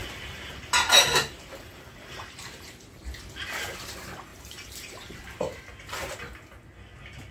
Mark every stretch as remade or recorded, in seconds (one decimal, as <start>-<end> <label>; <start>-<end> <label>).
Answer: 0.0-0.5 remade; 0.5-1.2 recorded; 1.2-3.0 remade; 3.0-4.3 recorded; 4.3-5.7 remade; 5.7-7.3 recorded